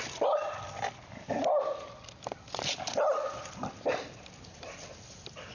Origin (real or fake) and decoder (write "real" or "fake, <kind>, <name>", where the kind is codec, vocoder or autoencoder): fake, vocoder, BigVGAN v2